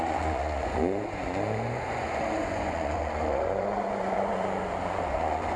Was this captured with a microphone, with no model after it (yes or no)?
no